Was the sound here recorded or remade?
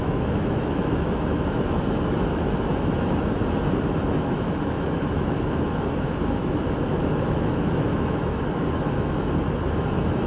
remade